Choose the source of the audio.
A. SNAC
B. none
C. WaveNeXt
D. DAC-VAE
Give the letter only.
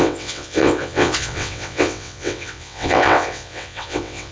C